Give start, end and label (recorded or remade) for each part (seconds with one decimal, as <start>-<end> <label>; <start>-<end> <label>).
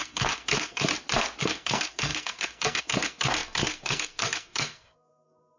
0.0-0.9 remade; 0.9-1.4 recorded; 1.4-5.6 remade